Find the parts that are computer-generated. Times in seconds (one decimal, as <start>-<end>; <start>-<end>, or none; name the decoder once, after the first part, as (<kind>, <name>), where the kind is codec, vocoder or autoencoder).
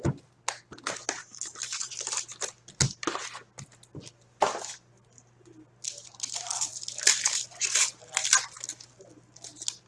1.2-1.9 (codec, DAC)